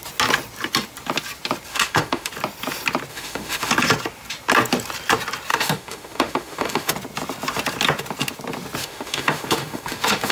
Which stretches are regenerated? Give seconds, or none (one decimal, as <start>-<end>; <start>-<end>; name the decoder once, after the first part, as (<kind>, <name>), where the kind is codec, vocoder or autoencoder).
1.7-2.3 (autoencoder, DAC-VAE); 3.1-3.7; 5.5-6.9; 8.8-10.3